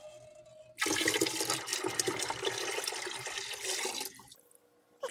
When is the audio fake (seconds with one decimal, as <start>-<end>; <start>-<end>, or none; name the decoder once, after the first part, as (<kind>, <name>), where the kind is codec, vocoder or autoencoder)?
none